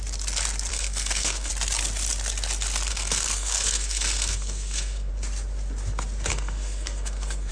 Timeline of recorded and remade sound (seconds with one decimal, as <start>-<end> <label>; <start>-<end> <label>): 0.0-0.7 recorded; 0.7-1.5 remade; 1.5-2.9 recorded; 2.9-5.1 remade; 5.1-6.3 recorded; 6.3-7.5 remade